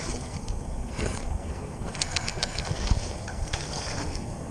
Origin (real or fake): fake